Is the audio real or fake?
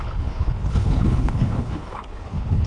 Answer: fake